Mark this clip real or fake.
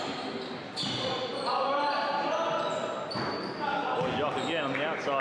real